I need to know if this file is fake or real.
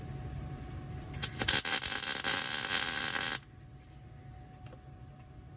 real